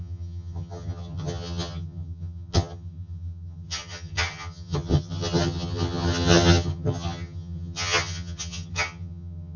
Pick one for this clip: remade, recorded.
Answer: remade